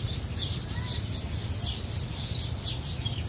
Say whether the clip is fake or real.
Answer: real